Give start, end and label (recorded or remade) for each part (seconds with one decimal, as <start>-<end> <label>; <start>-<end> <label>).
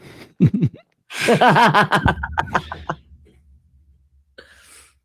0.0-5.0 recorded